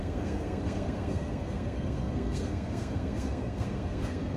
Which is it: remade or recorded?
remade